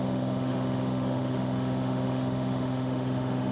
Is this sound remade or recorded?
remade